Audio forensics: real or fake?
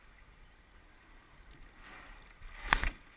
real